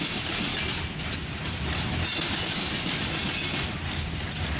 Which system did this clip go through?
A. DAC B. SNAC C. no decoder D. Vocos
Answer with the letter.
C